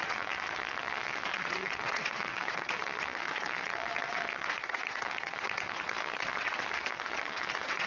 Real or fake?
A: fake